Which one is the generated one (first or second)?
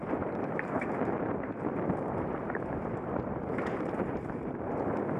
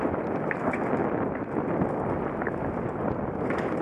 first